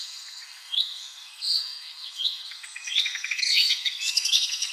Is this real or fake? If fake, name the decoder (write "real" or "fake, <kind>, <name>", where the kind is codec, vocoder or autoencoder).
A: fake, codec, SNAC